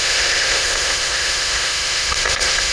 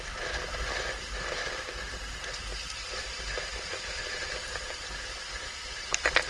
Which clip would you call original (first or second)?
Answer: second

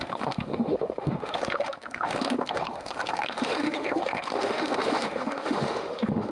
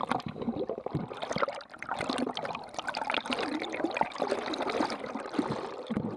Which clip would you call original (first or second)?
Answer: second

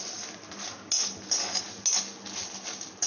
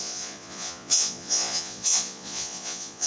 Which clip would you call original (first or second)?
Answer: first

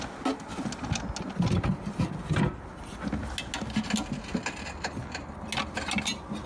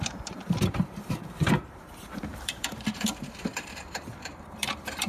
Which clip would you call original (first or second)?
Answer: first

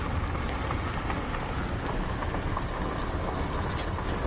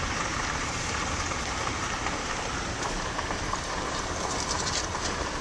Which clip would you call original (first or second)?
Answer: first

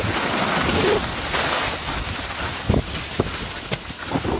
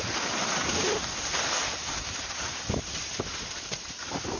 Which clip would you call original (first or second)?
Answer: first